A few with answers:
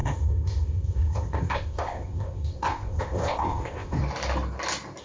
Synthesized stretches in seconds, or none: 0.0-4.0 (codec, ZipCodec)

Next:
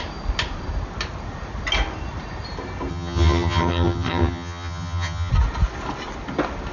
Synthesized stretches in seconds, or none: 2.9-5.3 (vocoder, HiFi-GAN)

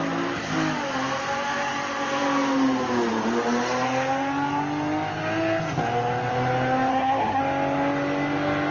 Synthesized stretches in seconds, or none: 6.9-7.4 (codec, SNAC)

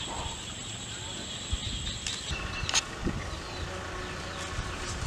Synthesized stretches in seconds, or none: none

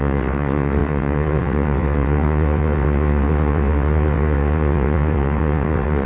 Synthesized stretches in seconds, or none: 0.0-6.1 (vocoder, WaveNeXt)

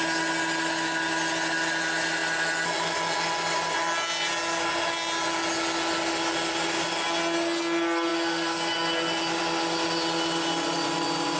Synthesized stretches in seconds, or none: none